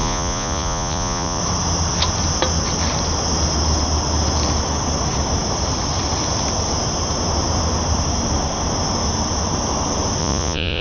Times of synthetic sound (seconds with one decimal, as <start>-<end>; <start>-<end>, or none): 0.0-1.4; 10.2-10.8